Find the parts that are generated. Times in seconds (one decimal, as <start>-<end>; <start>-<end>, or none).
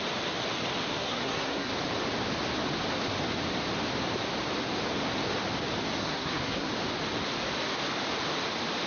0.9-1.7; 6.0-6.7